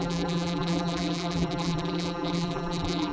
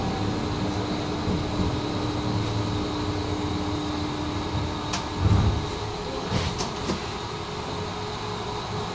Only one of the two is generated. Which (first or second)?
first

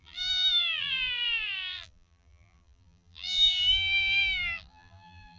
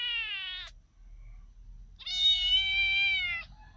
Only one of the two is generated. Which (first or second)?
first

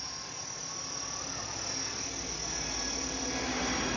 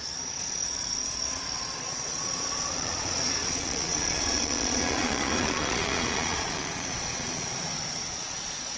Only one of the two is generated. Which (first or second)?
second